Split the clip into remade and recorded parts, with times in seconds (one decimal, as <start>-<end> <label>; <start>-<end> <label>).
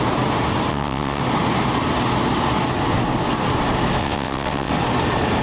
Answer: 0.0-0.7 recorded; 0.7-1.2 remade; 1.2-4.0 recorded; 4.0-4.7 remade; 4.7-5.4 recorded